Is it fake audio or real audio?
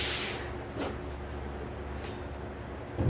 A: real